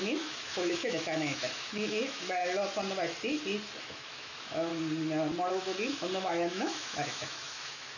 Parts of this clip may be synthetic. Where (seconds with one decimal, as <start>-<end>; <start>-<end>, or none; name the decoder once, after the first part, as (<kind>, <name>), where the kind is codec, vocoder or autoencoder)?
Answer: 0.0-2.4 (autoencoder, DAC-VAE); 3.8-4.7; 5.5-8.0

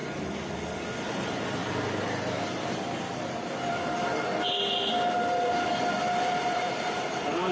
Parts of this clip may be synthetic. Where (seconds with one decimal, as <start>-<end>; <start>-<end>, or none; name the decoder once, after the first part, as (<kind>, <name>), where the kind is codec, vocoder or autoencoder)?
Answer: 1.1-1.6 (vocoder, BigVGAN v2); 6.1-7.5